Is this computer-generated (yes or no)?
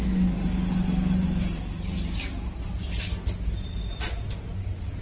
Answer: no